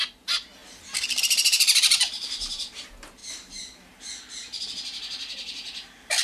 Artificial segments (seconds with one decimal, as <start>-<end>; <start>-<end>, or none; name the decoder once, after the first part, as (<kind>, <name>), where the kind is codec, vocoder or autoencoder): 0.0-0.6 (vocoder, BigVGAN v2); 1.2-6.2